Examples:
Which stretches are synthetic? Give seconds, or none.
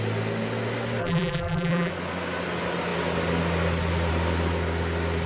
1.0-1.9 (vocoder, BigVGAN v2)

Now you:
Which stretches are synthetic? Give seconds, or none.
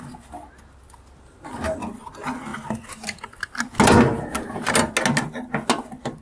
none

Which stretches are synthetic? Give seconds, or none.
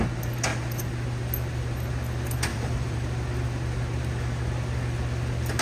2.5-3.1 (vocoder, BigVGAN v2)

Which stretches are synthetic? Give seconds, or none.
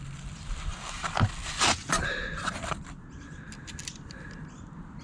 0.7-1.3 (vocoder, BigVGAN v2); 1.8-2.8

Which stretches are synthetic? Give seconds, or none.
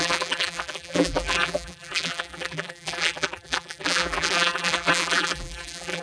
0.0-6.0 (vocoder, BigVGAN v2)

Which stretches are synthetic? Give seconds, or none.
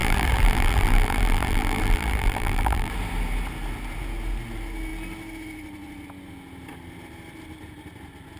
0.0-2.9 (vocoder, BigVGAN v2)